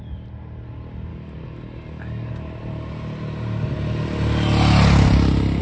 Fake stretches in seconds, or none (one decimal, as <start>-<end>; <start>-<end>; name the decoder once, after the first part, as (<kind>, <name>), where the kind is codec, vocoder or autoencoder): 1.1-2.3 (codec, DAC)